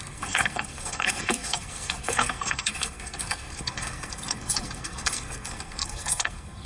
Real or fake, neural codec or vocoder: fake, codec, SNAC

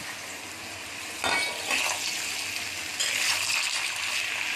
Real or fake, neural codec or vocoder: real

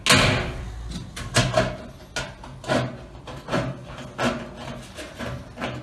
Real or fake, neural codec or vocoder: real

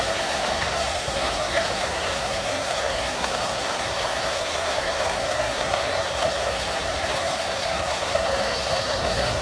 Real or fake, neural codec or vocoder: fake, codec, SNAC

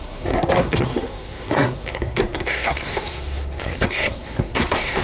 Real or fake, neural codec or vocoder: fake, codec, SNAC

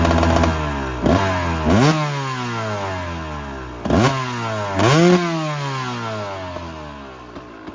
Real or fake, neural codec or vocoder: real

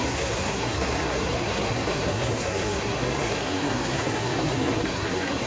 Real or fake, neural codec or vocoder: fake, codec, SNAC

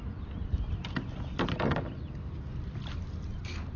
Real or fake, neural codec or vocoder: real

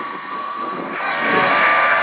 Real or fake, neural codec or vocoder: fake, codec, SNAC